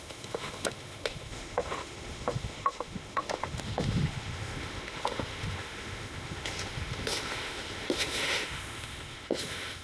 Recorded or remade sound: remade